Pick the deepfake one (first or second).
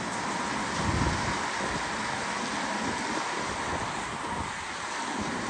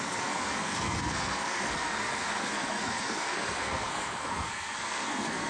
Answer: second